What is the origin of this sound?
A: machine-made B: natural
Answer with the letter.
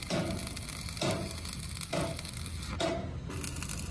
B